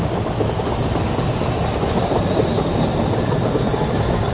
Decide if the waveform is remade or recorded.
recorded